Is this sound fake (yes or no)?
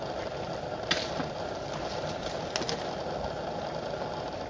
no